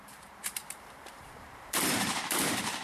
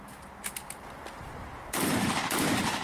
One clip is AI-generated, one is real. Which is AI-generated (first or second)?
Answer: first